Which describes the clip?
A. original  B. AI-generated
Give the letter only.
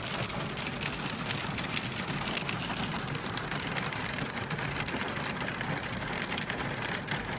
A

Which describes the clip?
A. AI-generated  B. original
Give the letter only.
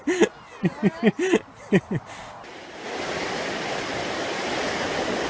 B